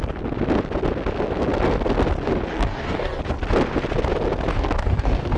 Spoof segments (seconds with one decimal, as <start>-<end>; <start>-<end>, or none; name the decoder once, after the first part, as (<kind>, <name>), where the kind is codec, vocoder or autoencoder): 2.5-3.2 (codec, DAC); 4.5-5.4